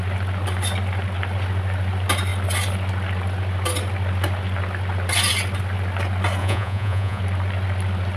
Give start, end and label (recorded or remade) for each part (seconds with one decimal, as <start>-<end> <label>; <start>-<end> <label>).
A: 0.0-6.4 recorded; 6.4-7.2 remade; 7.2-8.2 recorded